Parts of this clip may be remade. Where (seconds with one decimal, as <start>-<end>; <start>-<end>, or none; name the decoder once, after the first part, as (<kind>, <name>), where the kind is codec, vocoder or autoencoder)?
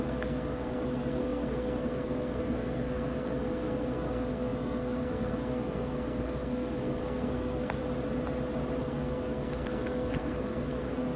0.0-7.8 (codec, SNAC); 8.8-11.2